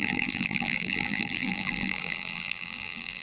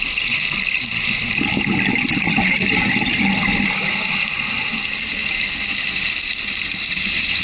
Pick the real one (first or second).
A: second